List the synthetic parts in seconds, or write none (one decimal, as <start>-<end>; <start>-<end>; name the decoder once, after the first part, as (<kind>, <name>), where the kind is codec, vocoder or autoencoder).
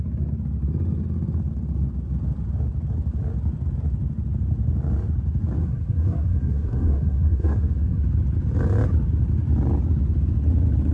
5.6-8.0 (codec, SNAC)